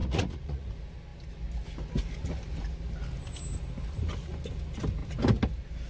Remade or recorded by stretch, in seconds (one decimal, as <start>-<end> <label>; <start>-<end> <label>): 0.0-0.7 remade; 0.7-5.9 recorded

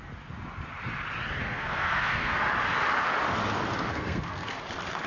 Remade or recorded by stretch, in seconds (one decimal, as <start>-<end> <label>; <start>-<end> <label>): 0.0-1.4 recorded; 1.4-2.4 remade; 2.4-3.9 recorded; 3.9-4.5 remade; 4.5-5.1 recorded

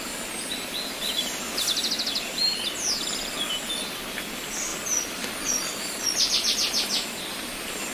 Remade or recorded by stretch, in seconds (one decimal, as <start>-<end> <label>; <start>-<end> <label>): 0.0-7.9 recorded